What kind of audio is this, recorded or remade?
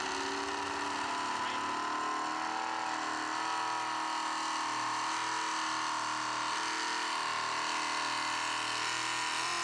recorded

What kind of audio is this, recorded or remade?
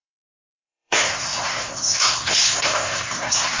remade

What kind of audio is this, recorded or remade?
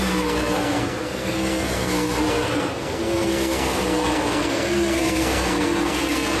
remade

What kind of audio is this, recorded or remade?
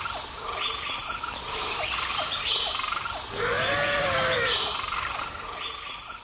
recorded